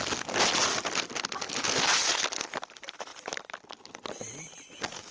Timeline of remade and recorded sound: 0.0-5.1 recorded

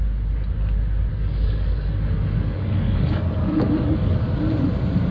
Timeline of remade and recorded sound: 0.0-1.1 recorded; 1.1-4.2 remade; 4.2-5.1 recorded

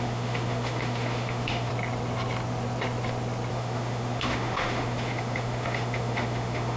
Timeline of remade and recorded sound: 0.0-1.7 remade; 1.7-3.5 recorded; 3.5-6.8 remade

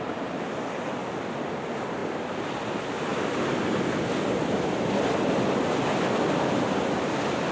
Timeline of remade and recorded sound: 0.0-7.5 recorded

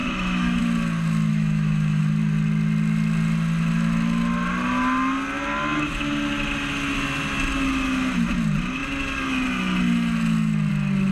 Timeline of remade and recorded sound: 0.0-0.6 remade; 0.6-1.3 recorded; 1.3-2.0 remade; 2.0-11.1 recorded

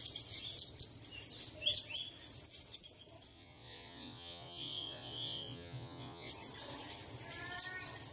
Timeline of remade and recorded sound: 0.0-3.3 recorded; 3.3-6.3 remade; 6.3-8.1 recorded

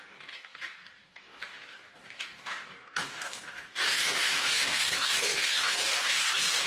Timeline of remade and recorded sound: 0.0-6.7 remade

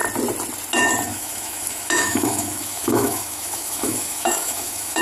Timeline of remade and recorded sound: 0.0-1.1 recorded; 1.1-5.0 remade